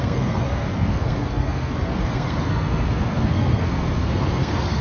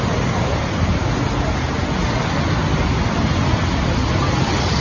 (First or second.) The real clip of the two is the second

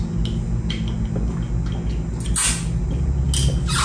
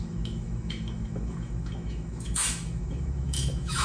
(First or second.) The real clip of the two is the first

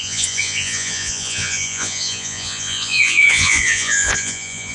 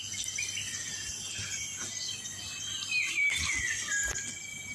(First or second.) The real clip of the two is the second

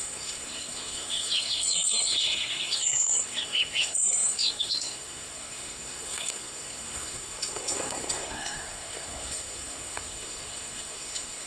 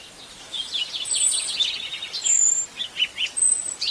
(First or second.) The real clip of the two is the second